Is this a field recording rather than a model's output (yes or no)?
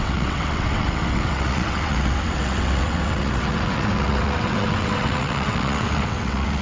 no